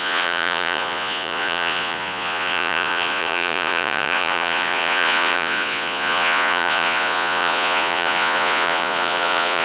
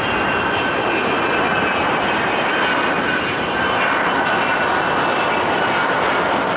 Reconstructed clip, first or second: first